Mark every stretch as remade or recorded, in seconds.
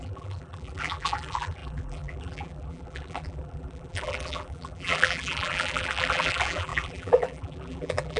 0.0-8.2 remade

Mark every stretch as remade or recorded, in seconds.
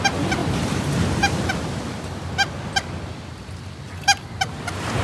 0.0-5.0 recorded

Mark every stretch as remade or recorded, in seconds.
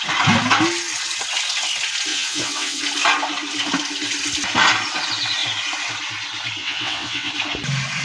0.0-2.1 recorded; 2.1-2.8 remade; 2.8-6.6 recorded; 6.6-7.3 remade; 7.3-8.0 recorded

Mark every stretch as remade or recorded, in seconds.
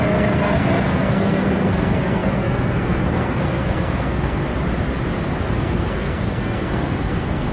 0.0-4.4 remade; 4.4-5.5 recorded; 5.5-7.5 remade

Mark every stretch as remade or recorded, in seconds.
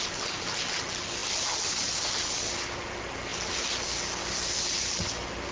0.0-5.5 recorded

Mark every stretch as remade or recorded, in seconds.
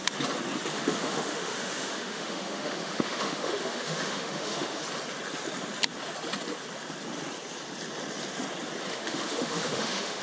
0.0-0.7 recorded; 0.7-4.8 remade; 4.8-8.9 recorded; 8.9-10.2 remade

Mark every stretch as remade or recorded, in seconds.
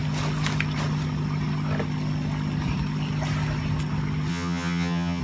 0.0-4.3 recorded; 4.3-5.2 remade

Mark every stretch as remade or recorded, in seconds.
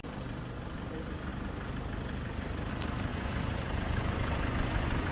0.0-3.1 recorded; 3.1-5.1 remade